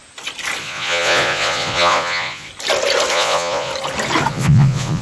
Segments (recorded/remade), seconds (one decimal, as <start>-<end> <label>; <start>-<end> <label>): 0.0-0.6 recorded; 0.6-2.5 remade; 2.5-3.1 recorded; 3.1-3.7 remade; 3.7-4.3 recorded; 4.3-5.0 remade